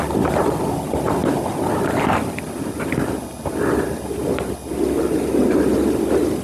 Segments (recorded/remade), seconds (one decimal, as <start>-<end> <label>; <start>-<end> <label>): 0.0-6.4 recorded